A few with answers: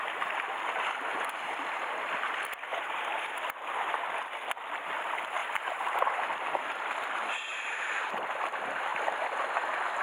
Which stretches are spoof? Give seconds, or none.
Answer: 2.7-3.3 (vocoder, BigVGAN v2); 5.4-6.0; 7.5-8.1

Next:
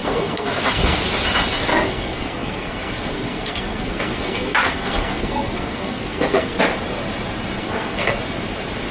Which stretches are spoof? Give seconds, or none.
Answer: 0.0-1.0 (codec, SNAC); 1.7-6.6; 7.6-8.2

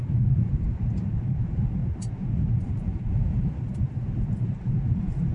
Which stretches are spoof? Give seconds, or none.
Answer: 0.0-1.8 (vocoder, BigVGAN v2); 2.6-5.3

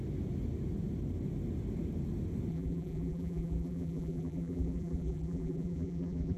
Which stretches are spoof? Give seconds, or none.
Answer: 2.5-6.4 (vocoder, BigVGAN v2)

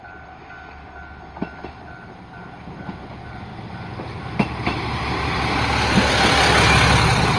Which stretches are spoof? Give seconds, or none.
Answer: none

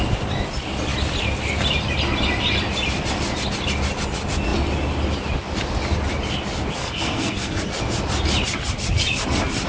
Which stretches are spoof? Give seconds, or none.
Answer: 6.8-7.6 (codec, SNAC)

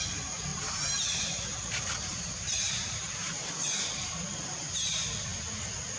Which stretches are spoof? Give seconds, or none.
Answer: 0.5-4.1 (vocoder, BigVGAN v2)